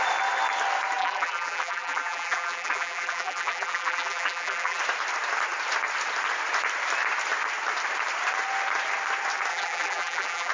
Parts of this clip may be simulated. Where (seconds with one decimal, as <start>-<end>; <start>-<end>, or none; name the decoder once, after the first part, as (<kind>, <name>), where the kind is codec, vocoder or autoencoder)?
1.0-4.8 (vocoder, BigVGAN v2); 9.5-10.5